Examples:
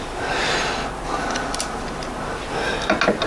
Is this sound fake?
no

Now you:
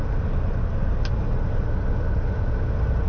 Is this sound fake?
no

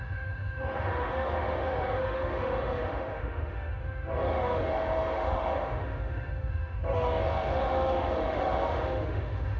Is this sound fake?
yes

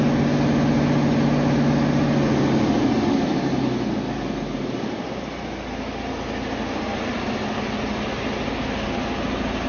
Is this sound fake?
no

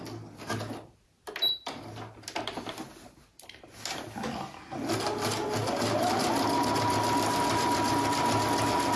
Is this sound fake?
no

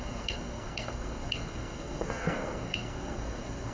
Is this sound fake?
yes